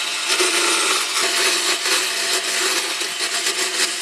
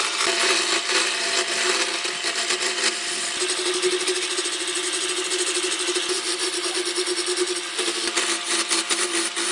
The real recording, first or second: second